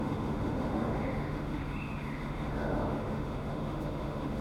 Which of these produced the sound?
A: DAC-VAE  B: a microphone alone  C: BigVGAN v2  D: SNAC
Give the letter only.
A